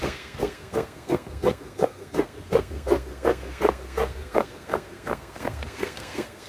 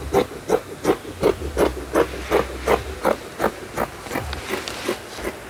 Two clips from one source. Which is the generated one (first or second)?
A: first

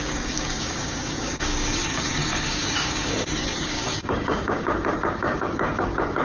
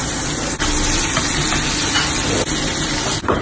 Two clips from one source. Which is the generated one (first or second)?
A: first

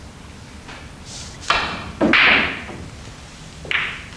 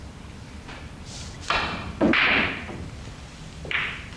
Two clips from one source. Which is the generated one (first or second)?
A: second